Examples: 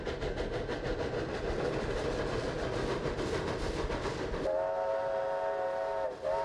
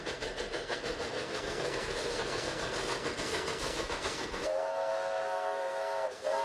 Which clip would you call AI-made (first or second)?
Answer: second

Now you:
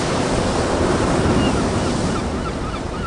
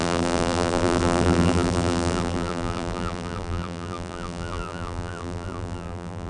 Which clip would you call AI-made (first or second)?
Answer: second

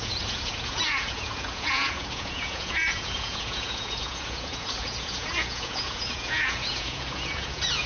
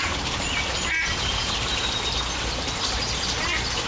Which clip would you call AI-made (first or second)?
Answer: first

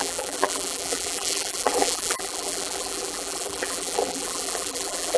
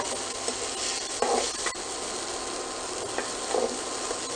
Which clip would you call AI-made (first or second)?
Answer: first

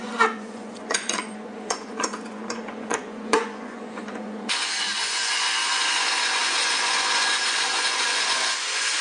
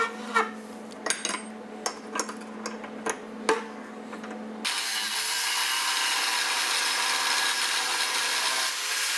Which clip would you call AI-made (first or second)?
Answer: first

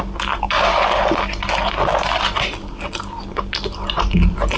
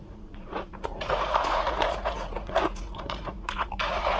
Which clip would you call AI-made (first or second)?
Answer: second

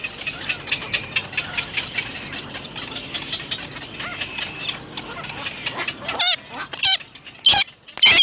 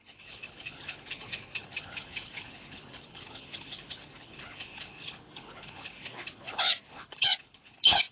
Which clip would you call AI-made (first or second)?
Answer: second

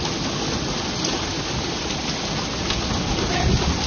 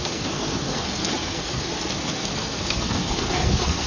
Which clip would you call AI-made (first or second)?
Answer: second